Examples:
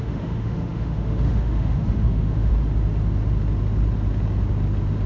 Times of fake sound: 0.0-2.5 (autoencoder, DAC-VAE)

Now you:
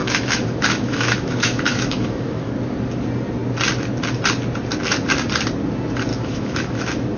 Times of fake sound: 0.0-2.5 (autoencoder, DAC-VAE); 6.1-6.8

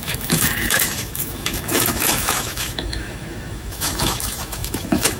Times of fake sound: 0.0-5.2 (autoencoder, DAC-VAE)

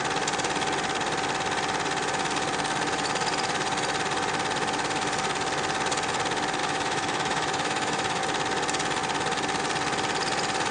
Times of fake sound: 6.6-8.2 (autoencoder, DAC-VAE)

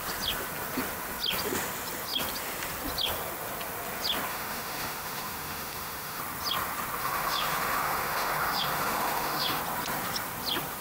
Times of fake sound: 4.3-6.2 (autoencoder, DAC-VAE); 7.0-9.6